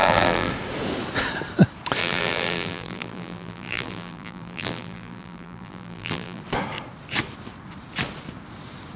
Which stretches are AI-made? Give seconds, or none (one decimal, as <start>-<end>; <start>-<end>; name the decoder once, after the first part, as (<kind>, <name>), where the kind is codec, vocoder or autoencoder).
0.0-0.5 (vocoder, BigVGAN v2); 2.0-6.4

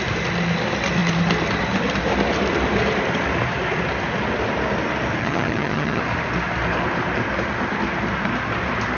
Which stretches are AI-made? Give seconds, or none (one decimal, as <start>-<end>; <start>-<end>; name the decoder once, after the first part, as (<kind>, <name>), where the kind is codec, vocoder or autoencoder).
5.2-6.0 (vocoder, HiFi-GAN)

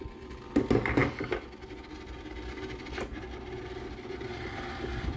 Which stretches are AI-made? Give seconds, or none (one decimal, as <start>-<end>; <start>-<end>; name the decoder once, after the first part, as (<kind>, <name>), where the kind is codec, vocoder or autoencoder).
none

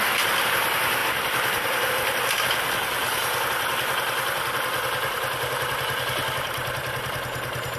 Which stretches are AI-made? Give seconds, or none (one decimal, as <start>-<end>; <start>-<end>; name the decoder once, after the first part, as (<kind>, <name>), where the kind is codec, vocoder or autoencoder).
1.0-1.9 (vocoder, BigVGAN v2)